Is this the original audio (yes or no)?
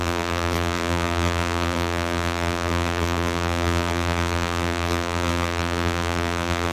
no